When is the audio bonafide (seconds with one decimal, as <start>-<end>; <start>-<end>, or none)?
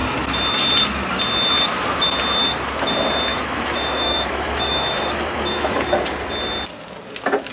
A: 0.0-3.3; 5.8-7.5